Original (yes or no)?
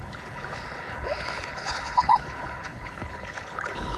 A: no